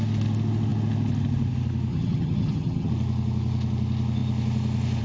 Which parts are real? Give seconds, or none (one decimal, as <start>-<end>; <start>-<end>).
0.0-1.9; 2.9-5.0